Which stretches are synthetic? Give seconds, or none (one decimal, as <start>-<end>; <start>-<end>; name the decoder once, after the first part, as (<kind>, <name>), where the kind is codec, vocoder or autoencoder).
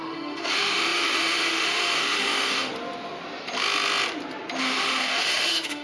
0.0-2.7 (autoencoder, DAC-VAE); 4.6-5.8